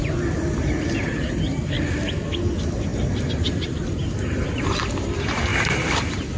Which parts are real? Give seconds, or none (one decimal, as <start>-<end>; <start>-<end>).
0.0-2.9; 4.6-6.4